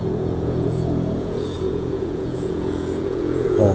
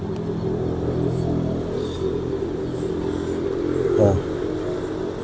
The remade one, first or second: first